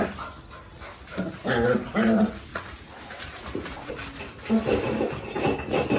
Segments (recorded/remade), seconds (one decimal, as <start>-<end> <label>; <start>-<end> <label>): 0.0-2.5 recorded; 2.5-3.9 remade; 3.9-6.0 recorded